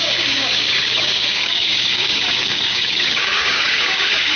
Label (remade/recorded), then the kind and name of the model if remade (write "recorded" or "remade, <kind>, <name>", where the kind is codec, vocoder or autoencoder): remade, codec, DAC